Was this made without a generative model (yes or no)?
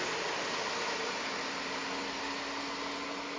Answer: yes